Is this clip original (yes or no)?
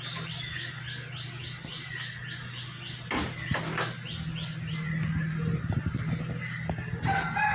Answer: yes